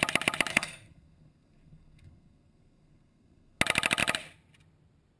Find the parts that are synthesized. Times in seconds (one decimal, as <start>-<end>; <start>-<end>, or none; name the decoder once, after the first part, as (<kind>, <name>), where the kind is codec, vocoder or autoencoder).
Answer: 0.5-3.6 (codec, SNAC)